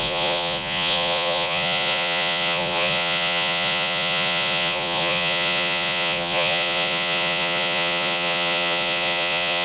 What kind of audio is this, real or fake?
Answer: fake